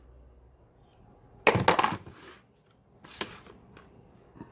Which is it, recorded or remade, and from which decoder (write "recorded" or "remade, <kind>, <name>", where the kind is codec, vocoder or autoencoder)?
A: recorded